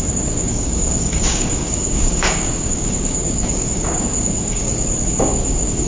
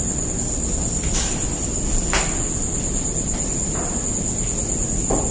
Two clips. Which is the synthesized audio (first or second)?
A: first